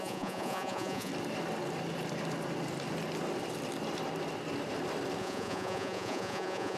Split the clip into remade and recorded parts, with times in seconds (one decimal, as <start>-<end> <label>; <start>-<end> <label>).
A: 0.0-1.1 remade; 1.1-5.2 recorded; 5.2-6.8 remade